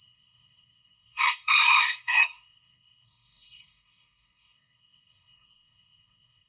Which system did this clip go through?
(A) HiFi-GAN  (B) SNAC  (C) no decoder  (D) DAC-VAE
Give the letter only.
B